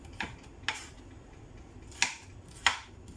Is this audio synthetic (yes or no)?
no